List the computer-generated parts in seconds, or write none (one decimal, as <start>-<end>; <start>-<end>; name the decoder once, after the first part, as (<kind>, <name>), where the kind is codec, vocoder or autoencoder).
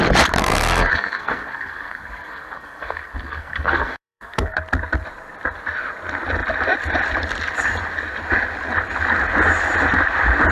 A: 0.4-4.6 (codec, SNAC)